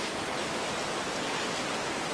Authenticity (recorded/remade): recorded